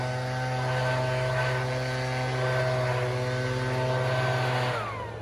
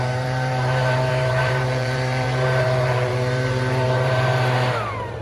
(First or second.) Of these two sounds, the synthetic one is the second